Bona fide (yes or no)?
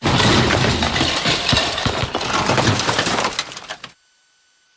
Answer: yes